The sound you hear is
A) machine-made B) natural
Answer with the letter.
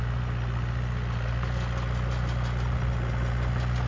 B